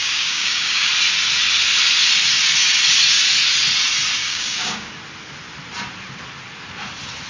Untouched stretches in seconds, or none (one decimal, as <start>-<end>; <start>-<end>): 0.9-4.2; 4.9-7.3